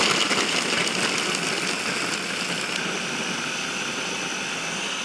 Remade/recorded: recorded